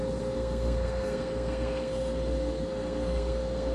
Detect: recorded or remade remade